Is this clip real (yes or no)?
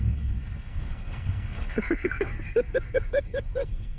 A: no